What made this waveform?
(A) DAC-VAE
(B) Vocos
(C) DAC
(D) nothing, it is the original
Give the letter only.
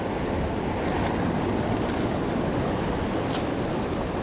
D